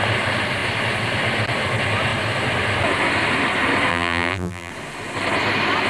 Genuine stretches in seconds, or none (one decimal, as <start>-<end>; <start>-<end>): 0.0-3.9; 4.7-5.9